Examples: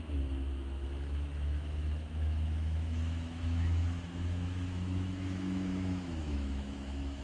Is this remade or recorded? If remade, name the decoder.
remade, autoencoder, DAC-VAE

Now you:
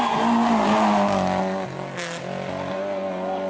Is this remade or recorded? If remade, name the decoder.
recorded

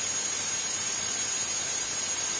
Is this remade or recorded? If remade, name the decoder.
recorded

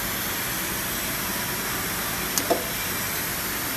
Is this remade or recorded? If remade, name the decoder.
recorded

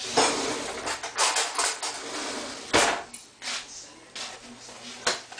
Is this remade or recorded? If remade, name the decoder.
recorded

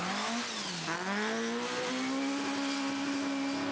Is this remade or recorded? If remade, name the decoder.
recorded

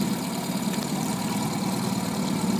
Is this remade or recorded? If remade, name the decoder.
recorded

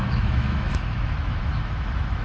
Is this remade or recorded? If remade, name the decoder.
remade, autoencoder, DAC-VAE